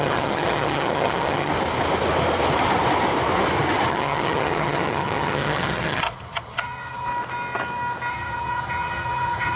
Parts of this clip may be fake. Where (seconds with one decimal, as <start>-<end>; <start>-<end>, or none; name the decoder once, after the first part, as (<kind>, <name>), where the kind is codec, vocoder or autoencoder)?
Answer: 0.0-1.5 (vocoder, HiFi-GAN); 3.9-7.1; 8.1-9.6